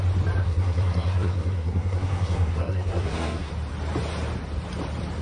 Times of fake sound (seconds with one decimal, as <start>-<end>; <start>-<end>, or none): 0.4-3.5

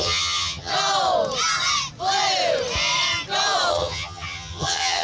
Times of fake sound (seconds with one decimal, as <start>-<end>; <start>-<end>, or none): 0.0-0.7; 3.7-5.0

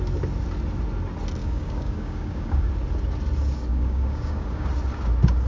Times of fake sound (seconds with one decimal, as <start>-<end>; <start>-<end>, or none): 1.4-2.7; 3.7-4.7

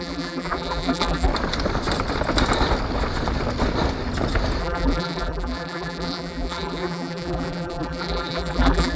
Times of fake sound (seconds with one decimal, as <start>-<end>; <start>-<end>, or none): 0.0-1.3; 4.6-9.0

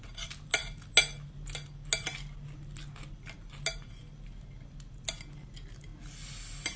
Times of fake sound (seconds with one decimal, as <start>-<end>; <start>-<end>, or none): none

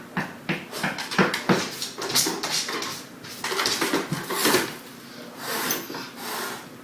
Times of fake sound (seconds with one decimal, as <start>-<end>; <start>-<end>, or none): 1.2-2.7; 4.4-6.3

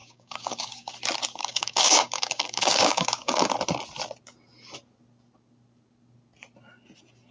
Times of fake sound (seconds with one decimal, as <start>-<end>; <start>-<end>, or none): 0.0-0.9; 1.4-3.5

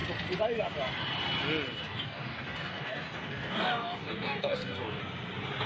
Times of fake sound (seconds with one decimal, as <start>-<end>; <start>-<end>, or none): 1.8-5.0